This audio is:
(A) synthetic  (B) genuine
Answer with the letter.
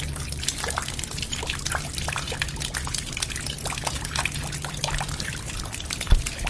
B